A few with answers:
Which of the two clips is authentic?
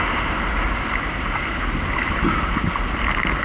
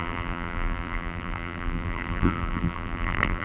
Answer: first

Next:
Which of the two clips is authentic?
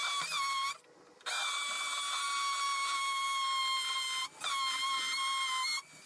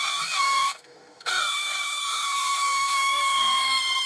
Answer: first